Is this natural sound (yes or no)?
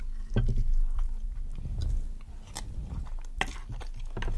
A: yes